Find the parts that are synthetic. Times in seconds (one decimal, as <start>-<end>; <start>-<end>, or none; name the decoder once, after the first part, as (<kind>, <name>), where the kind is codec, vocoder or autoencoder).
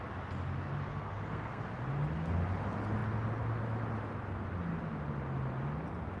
0.9-1.6 (codec, SNAC)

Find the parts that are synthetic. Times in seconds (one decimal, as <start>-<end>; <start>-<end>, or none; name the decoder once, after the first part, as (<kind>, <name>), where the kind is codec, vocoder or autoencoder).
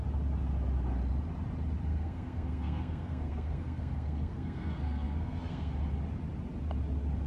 1.9-5.7 (codec, SNAC)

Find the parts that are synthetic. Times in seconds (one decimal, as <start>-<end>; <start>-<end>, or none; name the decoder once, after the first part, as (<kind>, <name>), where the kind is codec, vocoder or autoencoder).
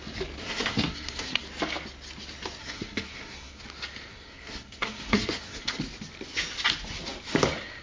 0.4-1.4 (codec, SNAC); 2.6-3.6; 4.1-5.8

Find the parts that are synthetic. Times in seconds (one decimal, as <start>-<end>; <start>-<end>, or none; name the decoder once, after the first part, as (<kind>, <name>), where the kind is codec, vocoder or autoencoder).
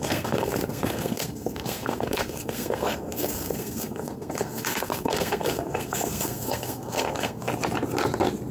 0.0-7.5 (codec, SNAC)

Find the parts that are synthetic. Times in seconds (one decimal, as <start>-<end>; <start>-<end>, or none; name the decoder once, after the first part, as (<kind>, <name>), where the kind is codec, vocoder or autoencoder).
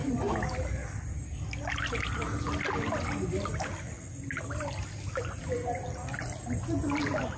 none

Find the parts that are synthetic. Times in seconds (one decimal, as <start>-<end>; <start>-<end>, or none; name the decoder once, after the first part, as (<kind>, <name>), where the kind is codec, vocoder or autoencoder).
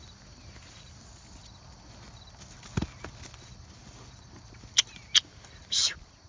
none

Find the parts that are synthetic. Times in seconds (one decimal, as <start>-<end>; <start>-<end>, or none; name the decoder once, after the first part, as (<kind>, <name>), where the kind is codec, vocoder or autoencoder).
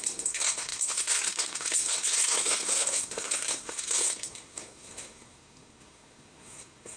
0.0-7.0 (codec, SNAC)